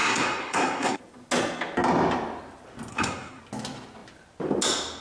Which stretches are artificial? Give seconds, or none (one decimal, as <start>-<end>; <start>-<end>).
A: 0.0-1.0; 2.9-3.4